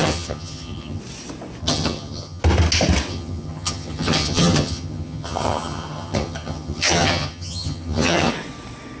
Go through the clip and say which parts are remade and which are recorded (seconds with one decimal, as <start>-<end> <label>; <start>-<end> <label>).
0.0-1.0 remade; 1.0-1.6 recorded; 1.6-2.4 remade; 2.4-3.1 recorded; 3.1-8.3 remade; 8.3-9.0 recorded